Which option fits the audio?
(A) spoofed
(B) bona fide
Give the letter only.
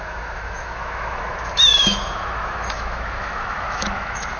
A